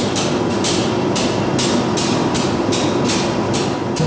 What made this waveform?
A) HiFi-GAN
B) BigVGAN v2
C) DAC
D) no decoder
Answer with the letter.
D